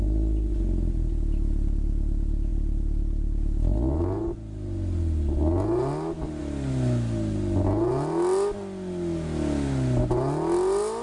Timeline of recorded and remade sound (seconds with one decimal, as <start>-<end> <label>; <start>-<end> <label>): 0.0-11.0 recorded